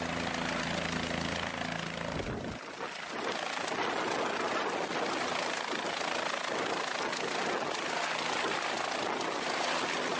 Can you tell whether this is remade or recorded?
recorded